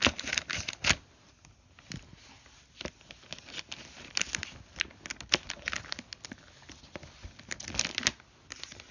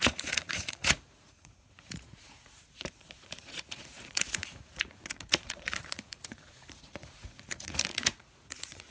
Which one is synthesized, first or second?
second